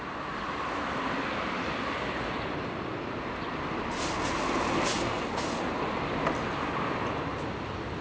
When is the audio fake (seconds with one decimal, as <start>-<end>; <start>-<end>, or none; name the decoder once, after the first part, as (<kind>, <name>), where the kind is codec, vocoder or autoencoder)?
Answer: none